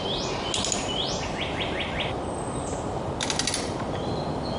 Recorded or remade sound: recorded